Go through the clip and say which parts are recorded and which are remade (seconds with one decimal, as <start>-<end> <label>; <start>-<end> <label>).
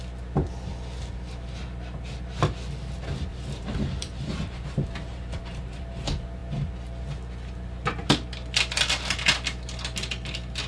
0.0-3.3 recorded; 3.3-5.8 remade; 5.8-10.7 recorded